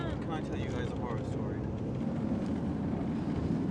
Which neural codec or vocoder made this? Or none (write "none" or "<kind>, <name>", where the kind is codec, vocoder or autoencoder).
none